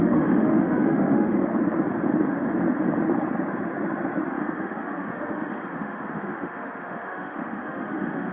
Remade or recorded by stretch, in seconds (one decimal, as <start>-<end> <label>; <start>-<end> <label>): 0.0-1.5 remade; 1.5-4.3 recorded; 4.3-8.3 remade